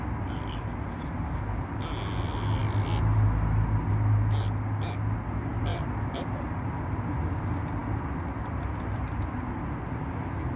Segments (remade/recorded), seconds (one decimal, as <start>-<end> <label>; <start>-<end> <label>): 0.0-10.6 recorded